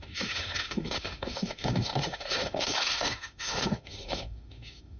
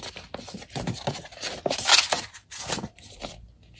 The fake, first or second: first